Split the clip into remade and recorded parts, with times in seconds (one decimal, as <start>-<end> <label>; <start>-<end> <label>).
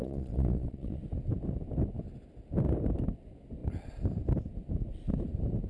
0.0-1.0 remade; 1.0-5.7 recorded